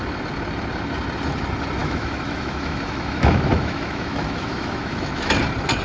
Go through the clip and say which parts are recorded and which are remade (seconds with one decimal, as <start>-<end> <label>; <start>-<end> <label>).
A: 0.0-1.8 recorded; 1.8-5.3 remade; 5.3-5.8 recorded